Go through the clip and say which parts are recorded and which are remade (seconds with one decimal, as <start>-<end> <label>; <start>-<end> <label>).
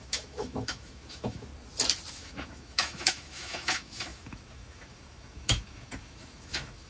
0.0-1.5 remade; 1.5-2.1 recorded; 2.1-6.9 remade